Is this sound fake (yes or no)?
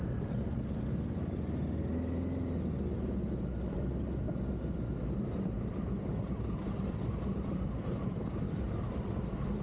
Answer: no